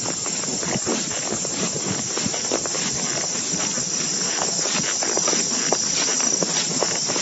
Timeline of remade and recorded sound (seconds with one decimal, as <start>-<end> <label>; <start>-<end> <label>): 0.0-2.4 recorded; 2.4-6.7 remade; 6.7-7.2 recorded